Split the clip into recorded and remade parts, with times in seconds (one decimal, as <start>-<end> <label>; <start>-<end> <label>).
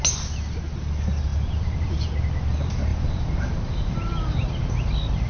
0.0-1.3 recorded; 1.3-1.9 remade; 1.9-2.9 recorded; 2.9-4.5 remade; 4.5-5.3 recorded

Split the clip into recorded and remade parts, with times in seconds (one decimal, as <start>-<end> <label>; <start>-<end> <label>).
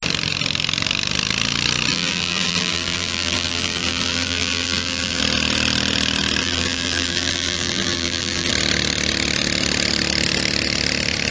0.0-1.9 recorded; 1.9-5.2 remade; 5.2-6.4 recorded; 6.4-8.5 remade; 8.5-11.3 recorded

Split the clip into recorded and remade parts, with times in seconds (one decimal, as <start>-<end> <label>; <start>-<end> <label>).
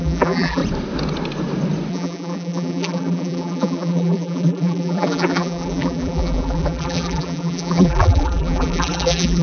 0.0-0.6 remade; 0.6-1.9 recorded; 1.9-9.4 remade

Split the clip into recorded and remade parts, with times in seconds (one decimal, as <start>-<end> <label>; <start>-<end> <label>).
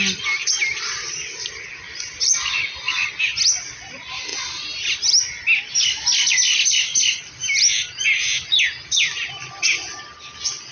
0.0-0.4 recorded; 0.4-1.5 remade; 1.5-10.7 recorded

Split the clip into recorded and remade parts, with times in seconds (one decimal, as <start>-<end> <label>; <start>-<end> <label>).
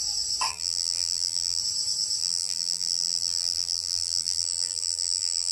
0.0-0.5 recorded; 0.5-1.6 remade; 1.6-2.2 recorded; 2.2-5.5 remade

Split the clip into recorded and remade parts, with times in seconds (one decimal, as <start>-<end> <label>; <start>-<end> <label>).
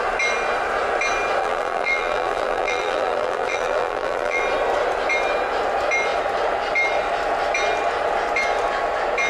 0.0-1.4 recorded; 1.4-4.4 remade; 4.4-9.3 recorded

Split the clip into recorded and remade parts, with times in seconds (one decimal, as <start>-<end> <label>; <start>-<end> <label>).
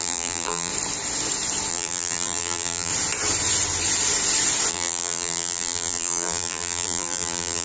0.0-0.7 remade; 0.7-1.7 recorded; 1.7-2.9 remade; 2.9-4.7 recorded; 4.7-7.6 remade